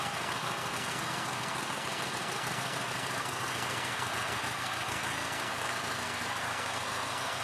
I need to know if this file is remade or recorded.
remade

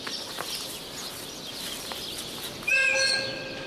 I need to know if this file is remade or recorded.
recorded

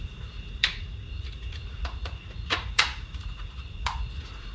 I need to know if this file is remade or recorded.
remade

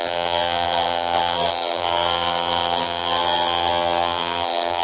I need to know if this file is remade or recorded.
remade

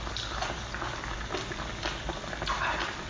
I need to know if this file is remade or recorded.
recorded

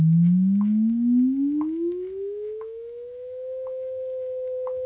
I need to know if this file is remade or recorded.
remade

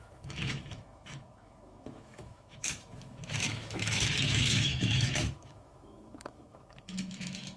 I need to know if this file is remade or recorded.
remade